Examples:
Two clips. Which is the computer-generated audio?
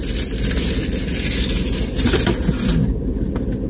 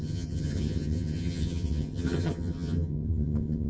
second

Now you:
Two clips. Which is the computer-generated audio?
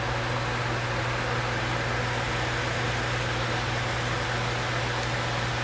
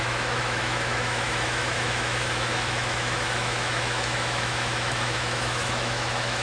second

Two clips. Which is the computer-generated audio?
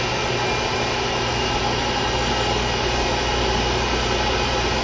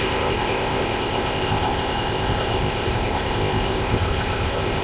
second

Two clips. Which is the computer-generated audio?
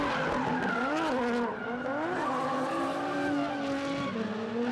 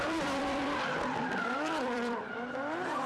second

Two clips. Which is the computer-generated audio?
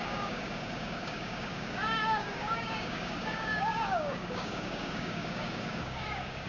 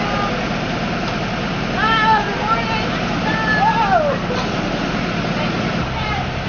first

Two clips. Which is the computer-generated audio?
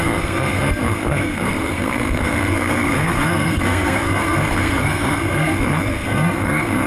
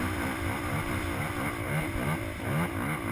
first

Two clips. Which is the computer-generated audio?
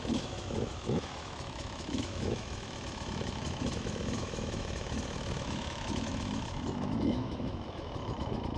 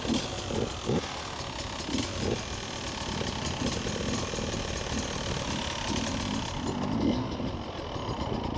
first